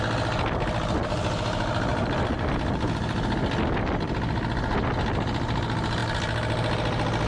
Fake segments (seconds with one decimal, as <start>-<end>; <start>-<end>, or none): 1.9-2.5